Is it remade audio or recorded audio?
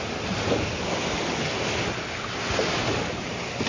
recorded